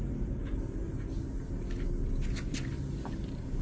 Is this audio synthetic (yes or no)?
no